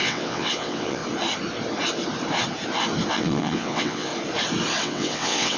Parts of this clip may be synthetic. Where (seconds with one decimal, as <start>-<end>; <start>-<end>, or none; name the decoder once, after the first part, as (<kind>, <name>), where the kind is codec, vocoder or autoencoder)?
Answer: 0.0-1.0 (vocoder, WaveNeXt); 3.1-4.1; 4.8-5.6